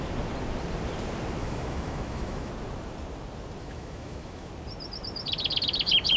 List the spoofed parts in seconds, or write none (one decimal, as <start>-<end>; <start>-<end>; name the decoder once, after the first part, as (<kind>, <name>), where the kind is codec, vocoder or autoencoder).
1.4-2.5 (autoencoder, DAC-VAE); 3.6-4.5